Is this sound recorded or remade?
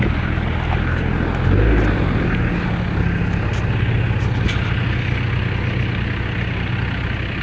recorded